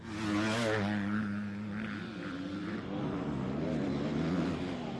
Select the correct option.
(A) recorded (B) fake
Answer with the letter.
A